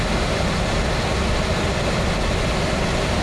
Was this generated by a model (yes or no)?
no